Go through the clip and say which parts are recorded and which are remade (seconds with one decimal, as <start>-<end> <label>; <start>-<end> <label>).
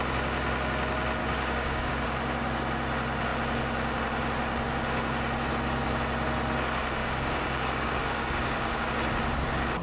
0.0-1.2 recorded; 1.2-1.9 remade; 1.9-7.0 recorded; 7.0-8.9 remade; 8.9-9.8 recorded